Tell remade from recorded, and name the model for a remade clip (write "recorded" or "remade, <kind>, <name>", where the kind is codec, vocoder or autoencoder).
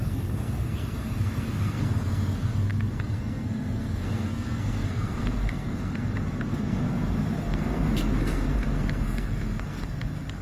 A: remade, codec, SNAC